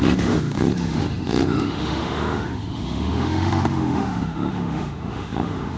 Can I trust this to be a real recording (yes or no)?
no